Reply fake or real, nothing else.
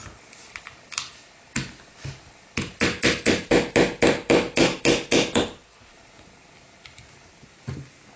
real